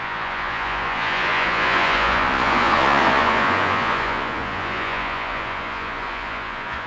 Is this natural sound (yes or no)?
no